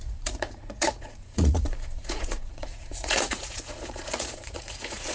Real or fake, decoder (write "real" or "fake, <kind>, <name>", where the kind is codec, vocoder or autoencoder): fake, vocoder, Vocos